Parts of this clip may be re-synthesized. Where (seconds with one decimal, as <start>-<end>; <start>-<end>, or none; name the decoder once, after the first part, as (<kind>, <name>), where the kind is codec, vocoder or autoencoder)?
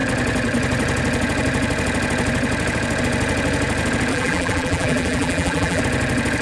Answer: 4.1-5.8 (vocoder, BigVGAN v2)